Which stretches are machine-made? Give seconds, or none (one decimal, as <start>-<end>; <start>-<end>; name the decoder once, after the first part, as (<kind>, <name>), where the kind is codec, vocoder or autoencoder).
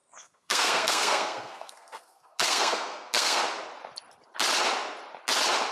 0.0-3.4 (codec, SNAC)